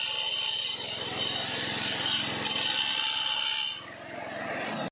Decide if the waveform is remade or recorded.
recorded